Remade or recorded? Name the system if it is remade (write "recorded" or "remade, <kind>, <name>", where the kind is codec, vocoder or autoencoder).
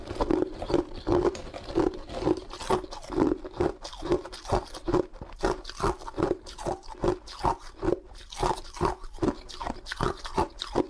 recorded